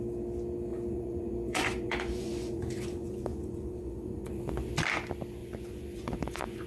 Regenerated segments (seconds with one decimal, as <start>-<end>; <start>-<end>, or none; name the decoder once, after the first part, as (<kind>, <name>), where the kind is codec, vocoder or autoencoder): 0.7-4.7 (vocoder, Vocos); 5.4-6.7